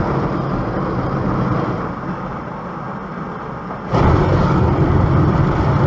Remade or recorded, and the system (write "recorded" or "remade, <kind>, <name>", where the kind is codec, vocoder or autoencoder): recorded